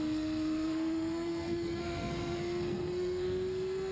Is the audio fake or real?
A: fake